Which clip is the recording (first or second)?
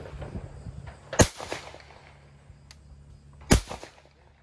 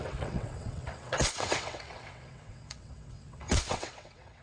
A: first